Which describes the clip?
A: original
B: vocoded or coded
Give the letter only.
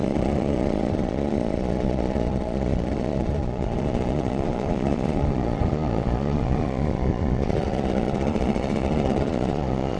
B